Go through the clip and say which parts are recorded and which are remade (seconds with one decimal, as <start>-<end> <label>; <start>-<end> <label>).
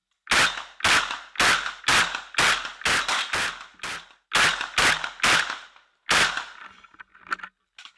0.0-8.0 recorded